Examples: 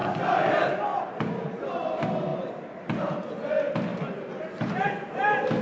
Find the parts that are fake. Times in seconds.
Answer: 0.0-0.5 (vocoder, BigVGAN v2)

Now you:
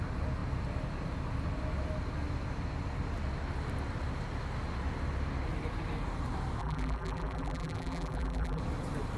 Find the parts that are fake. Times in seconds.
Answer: 6.6-8.6 (vocoder, BigVGAN v2)

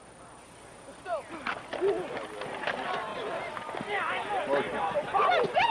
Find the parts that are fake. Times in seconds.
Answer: 1.1-1.8 (vocoder, BigVGAN v2); 4.7-5.3

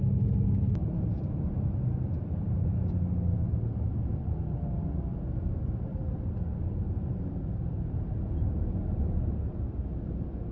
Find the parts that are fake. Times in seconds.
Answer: 0.8-1.9 (vocoder, BigVGAN v2); 5.9-9.6

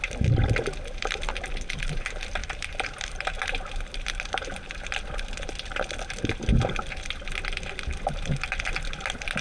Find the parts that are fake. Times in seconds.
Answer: 2.4-3.4 (vocoder, BigVGAN v2)

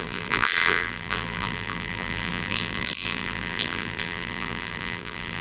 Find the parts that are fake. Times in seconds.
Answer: 0.0-5.4 (vocoder, BigVGAN v2)

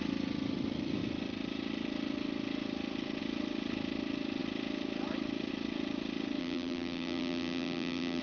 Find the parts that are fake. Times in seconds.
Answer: 6.4-8.2 (vocoder, BigVGAN v2)

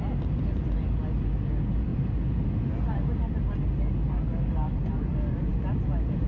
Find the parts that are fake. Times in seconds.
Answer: none